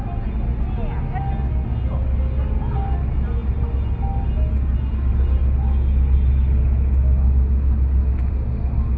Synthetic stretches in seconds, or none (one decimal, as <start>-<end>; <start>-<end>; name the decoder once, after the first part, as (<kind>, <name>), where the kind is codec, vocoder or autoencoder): none

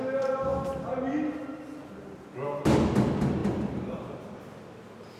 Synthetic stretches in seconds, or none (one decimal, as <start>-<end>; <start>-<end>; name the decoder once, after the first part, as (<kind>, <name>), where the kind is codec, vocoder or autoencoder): none

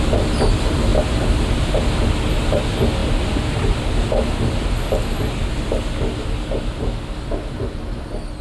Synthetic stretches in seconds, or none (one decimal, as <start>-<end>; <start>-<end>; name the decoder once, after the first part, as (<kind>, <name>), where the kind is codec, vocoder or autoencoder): none

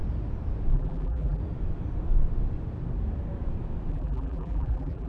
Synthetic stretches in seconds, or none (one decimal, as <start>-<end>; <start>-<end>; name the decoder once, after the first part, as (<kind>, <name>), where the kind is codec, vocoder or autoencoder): 0.7-1.4 (vocoder, BigVGAN v2); 3.9-5.1

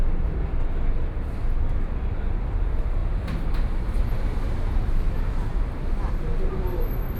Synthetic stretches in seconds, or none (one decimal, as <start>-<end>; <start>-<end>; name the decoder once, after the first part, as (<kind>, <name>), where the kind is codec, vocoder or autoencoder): none

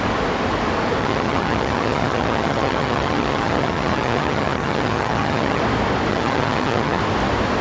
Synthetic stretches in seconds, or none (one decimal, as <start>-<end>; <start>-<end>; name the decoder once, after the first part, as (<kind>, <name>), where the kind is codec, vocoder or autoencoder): 1.0-5.6 (vocoder, HiFi-GAN); 6.1-7.0

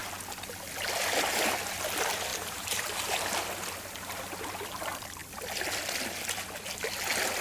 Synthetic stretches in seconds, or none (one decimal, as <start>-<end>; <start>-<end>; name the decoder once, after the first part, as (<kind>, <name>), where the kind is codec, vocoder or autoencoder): 2.3-3.1 (vocoder, BigVGAN v2)